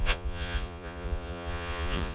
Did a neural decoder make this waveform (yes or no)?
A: yes